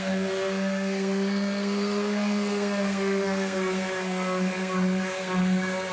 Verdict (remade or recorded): remade